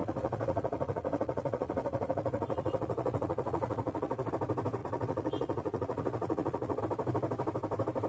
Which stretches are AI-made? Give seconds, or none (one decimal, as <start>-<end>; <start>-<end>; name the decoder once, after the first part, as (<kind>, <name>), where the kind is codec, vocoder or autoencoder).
0.0-4.3 (vocoder, Vocos); 4.8-6.8